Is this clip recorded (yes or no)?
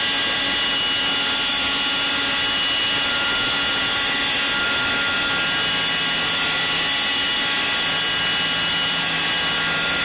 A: yes